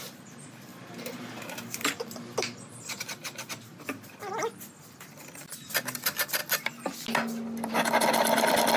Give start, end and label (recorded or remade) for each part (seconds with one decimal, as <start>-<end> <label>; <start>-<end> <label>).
0.0-0.7 recorded; 0.7-3.5 remade; 3.5-8.8 recorded